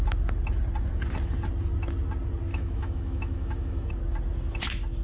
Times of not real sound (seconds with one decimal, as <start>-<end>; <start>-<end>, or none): 2.5-3.9